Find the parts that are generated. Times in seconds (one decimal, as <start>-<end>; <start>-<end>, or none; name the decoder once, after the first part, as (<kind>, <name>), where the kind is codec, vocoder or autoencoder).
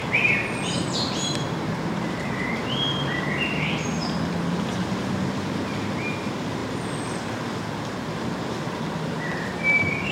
0.0-3.3 (vocoder, BigVGAN v2)